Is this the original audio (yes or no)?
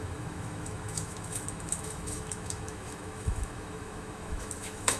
no